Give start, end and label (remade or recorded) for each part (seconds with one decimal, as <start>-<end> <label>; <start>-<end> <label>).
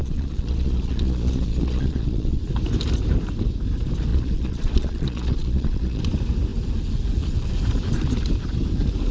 0.0-2.4 remade; 2.4-4.1 recorded; 4.1-6.0 remade; 6.0-9.1 recorded